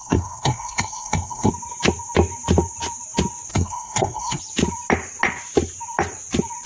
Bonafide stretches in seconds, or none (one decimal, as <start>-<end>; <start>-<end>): 1.5-3.5; 4.4-6.7